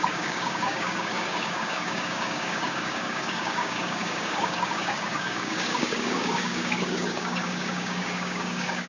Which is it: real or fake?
fake